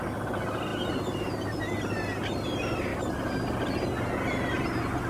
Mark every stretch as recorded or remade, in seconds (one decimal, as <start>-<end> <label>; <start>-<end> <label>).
0.0-5.1 recorded